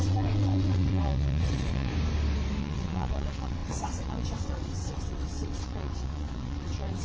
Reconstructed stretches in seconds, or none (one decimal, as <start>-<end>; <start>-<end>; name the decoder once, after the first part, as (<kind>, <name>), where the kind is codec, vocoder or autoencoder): 0.0-1.9 (vocoder, WaveNeXt); 2.6-7.0